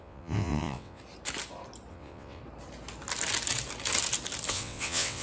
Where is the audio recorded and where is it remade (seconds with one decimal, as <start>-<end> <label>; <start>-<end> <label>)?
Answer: 0.0-1.0 remade; 1.0-1.9 recorded; 1.9-2.4 remade; 2.4-4.5 recorded; 4.5-5.2 remade